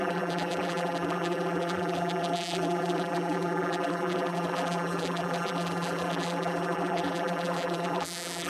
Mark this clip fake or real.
fake